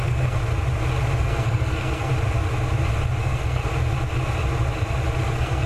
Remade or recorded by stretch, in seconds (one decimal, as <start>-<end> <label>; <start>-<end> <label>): 0.0-0.4 remade; 0.4-1.2 recorded; 1.2-2.1 remade; 2.1-3.2 recorded; 3.2-3.6 remade; 3.6-5.3 recorded; 5.3-5.7 remade